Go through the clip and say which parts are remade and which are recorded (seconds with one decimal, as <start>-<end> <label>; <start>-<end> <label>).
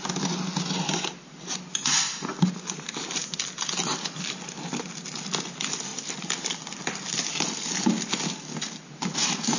0.0-5.9 recorded; 5.9-7.9 remade; 7.9-9.6 recorded